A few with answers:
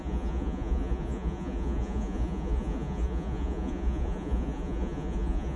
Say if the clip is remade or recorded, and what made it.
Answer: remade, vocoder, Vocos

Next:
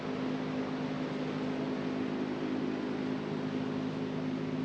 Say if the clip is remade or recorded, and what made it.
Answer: recorded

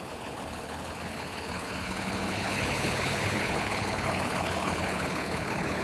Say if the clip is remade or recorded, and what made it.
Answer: remade, codec, HILCodec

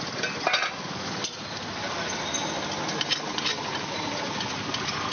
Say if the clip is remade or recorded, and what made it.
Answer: recorded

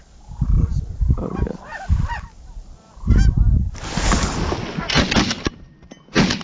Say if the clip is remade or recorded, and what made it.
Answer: recorded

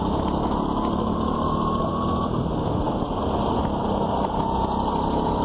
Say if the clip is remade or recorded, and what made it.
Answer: recorded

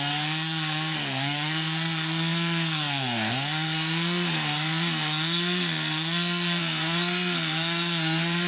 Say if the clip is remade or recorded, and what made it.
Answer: remade, codec, SNAC